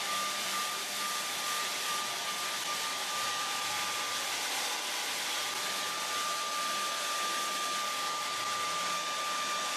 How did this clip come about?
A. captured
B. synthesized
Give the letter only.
A